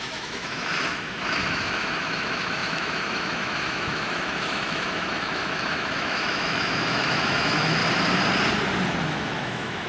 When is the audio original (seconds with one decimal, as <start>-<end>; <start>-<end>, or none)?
7.8-9.0